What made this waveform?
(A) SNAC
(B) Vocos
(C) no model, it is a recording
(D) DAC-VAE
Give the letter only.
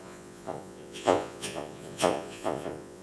B